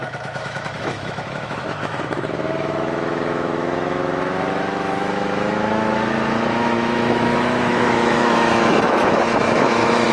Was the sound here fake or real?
fake